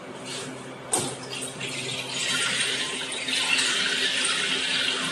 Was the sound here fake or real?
real